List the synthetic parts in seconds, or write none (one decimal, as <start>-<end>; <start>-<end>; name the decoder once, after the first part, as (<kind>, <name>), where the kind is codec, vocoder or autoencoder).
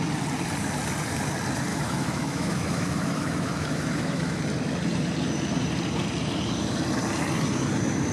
1.7-4.4 (autoencoder, DAC-VAE)